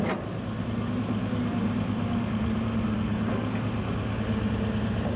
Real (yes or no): yes